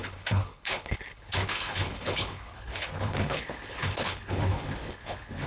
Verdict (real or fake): fake